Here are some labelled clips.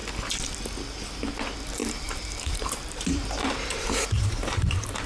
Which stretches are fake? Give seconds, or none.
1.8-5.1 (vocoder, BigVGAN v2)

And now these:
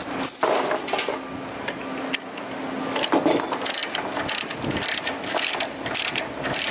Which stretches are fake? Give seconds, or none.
2.8-6.7 (vocoder, BigVGAN v2)

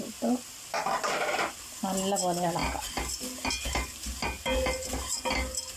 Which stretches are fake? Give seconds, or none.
none